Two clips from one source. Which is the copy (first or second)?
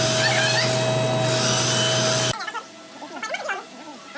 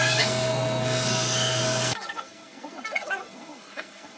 second